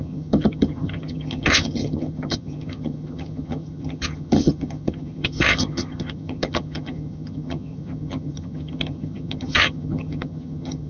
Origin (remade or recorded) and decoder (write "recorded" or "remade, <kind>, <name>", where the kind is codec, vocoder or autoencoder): remade, vocoder, HiFi-GAN